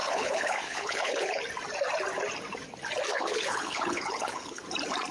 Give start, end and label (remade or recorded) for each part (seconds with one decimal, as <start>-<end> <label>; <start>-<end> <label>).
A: 0.0-1.4 remade; 1.4-3.1 recorded; 3.1-4.6 remade; 4.6-5.1 recorded